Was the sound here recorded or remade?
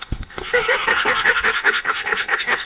remade